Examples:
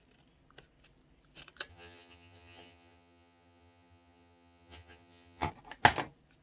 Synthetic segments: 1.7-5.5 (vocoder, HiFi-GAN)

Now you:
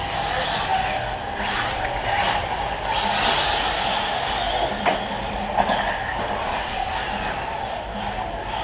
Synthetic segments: none